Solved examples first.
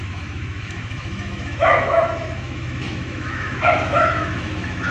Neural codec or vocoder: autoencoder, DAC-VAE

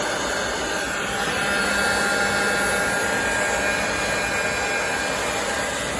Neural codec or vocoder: none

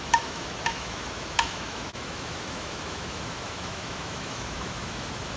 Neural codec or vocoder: autoencoder, DAC-VAE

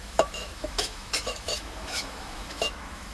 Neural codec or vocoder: autoencoder, DAC-VAE